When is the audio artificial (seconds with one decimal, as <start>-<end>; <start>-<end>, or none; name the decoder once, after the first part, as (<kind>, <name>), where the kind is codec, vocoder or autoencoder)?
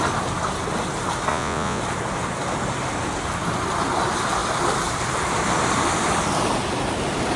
1.3-1.8 (vocoder, Vocos)